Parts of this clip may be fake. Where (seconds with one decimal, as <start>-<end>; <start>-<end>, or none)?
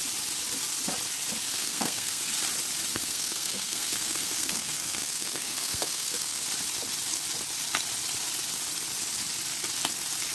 1.6-2.2; 3.0-6.4